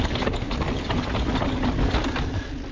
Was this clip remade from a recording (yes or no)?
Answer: no